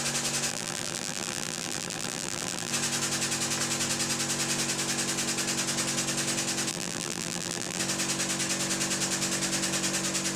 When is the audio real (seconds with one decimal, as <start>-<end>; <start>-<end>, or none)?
0.0-0.5; 2.7-6.7; 7.8-10.4